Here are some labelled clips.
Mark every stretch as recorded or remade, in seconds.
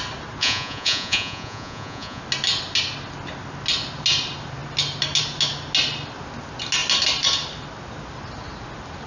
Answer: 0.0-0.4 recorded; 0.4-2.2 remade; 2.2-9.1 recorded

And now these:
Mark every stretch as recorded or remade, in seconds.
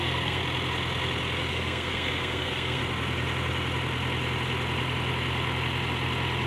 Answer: 0.0-0.4 remade; 0.4-1.5 recorded; 1.5-2.8 remade; 2.8-6.5 recorded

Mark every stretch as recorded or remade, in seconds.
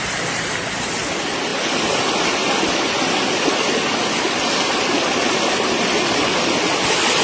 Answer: 0.0-7.2 recorded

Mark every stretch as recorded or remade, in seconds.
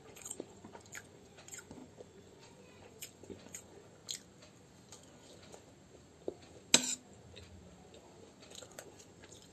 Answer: 0.0-4.0 remade; 4.0-8.7 recorded; 8.7-9.5 remade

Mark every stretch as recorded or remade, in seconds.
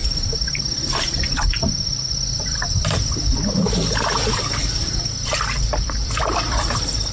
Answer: 0.0-7.1 remade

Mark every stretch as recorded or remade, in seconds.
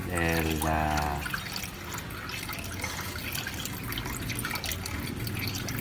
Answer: 0.0-5.8 recorded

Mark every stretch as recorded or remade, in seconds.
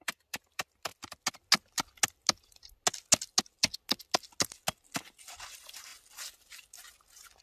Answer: 0.0-0.9 remade; 0.9-5.3 recorded; 5.3-5.9 remade; 5.9-7.4 recorded